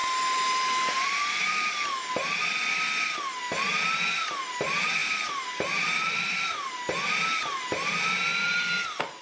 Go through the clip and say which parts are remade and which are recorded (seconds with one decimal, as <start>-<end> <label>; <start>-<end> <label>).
0.0-1.7 remade; 1.7-5.0 recorded; 5.0-6.7 remade; 6.7-9.2 recorded